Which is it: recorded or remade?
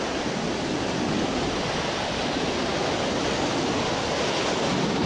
recorded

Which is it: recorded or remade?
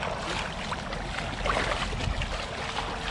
recorded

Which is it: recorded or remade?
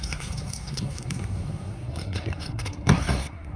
remade